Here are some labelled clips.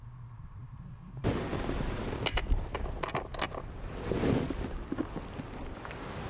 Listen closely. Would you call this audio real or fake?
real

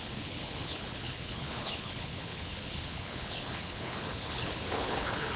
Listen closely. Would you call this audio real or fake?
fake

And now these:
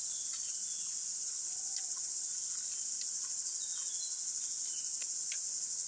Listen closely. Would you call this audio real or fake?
real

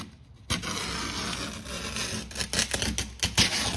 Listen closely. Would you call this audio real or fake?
real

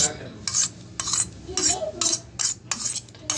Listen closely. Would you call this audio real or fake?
real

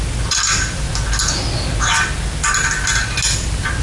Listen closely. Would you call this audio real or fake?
real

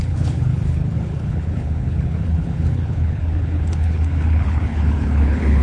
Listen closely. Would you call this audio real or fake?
fake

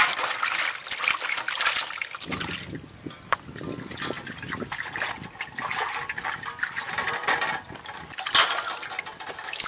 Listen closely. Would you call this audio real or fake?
real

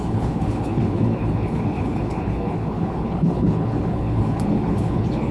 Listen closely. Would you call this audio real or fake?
fake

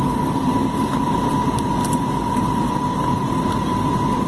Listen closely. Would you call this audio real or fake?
real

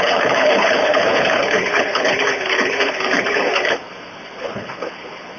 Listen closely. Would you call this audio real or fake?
fake